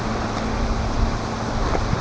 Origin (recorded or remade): recorded